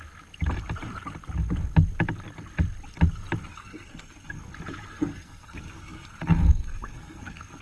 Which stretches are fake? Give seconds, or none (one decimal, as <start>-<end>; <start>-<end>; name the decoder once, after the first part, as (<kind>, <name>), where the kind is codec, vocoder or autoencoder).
3.5-4.4 (codec, SNAC); 4.9-7.6